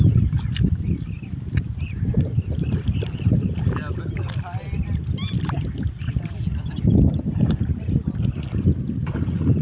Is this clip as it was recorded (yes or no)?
yes